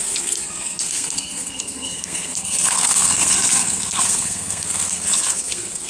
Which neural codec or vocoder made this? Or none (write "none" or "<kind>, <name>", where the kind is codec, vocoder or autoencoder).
codec, SNAC